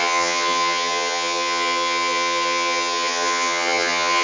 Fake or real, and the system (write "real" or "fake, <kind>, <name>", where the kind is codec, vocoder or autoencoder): fake, vocoder, HiFi-GAN